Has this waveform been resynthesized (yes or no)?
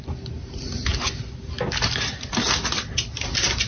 no